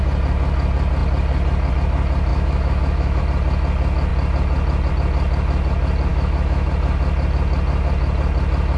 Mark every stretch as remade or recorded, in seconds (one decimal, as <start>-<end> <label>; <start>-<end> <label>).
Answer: 0.0-2.3 recorded; 2.3-3.2 remade; 3.2-6.1 recorded; 6.1-6.7 remade; 6.7-8.8 recorded